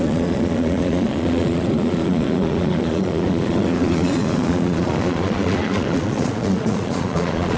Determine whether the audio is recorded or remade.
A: remade